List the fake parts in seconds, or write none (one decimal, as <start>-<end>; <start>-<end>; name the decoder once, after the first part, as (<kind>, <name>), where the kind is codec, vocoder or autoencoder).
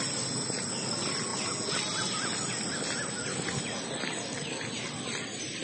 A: none